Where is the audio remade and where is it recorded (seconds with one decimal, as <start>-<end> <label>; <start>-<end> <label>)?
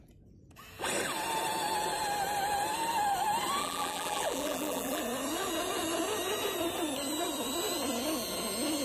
0.0-3.6 recorded; 3.6-5.0 remade; 5.0-8.8 recorded